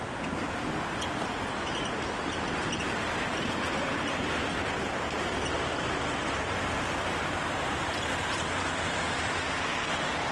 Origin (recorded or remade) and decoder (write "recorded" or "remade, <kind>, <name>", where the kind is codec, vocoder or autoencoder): recorded